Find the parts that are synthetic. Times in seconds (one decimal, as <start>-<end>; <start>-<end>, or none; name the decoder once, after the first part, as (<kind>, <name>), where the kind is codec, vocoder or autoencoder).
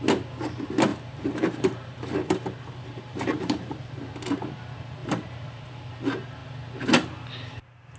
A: 0.9-4.1 (vocoder, BigVGAN v2); 5.0-5.7